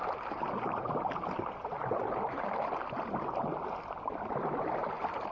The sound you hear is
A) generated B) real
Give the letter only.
B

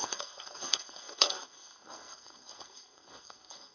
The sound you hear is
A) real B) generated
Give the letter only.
B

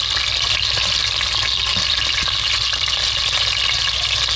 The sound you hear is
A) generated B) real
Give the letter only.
B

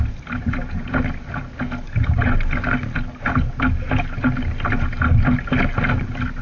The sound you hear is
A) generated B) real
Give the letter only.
B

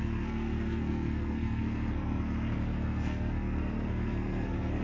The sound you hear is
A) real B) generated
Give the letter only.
B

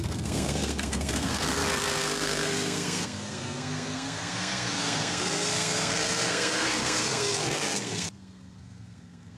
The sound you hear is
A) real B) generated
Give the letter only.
B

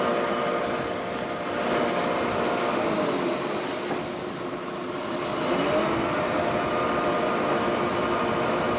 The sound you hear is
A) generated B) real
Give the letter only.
B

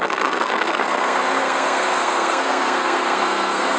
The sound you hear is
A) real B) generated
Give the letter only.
B